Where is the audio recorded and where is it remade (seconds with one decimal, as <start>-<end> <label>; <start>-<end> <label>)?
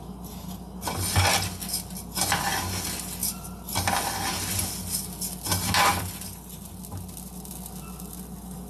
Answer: 0.0-8.7 recorded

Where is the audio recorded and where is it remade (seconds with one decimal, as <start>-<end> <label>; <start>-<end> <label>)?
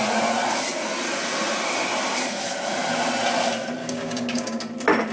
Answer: 0.0-3.8 recorded; 3.8-4.6 remade; 4.6-5.1 recorded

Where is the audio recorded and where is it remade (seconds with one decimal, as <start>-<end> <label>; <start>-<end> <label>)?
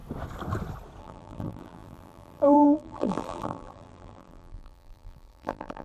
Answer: 0.0-1.0 recorded; 1.0-5.8 remade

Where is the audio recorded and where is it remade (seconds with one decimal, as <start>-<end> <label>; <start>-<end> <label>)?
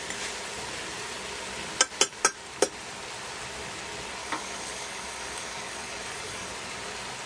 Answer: 0.0-4.2 recorded; 4.2-6.5 remade; 6.5-7.3 recorded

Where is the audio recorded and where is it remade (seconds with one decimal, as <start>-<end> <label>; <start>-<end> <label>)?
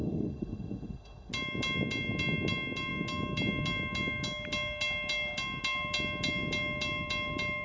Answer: 0.0-1.3 remade; 1.3-7.6 recorded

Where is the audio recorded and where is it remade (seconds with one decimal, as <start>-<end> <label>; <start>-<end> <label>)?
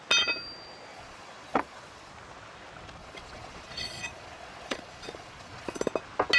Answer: 0.0-0.9 recorded; 0.9-2.1 remade; 2.1-3.0 recorded; 3.0-5.8 remade; 5.8-6.4 recorded